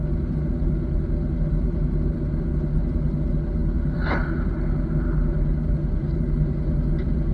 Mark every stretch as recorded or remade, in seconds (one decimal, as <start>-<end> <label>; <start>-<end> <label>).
0.0-7.3 recorded